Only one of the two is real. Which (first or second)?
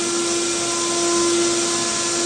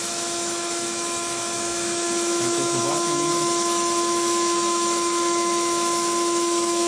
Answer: first